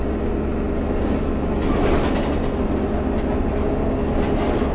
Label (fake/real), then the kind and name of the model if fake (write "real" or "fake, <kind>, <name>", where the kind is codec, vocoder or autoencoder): real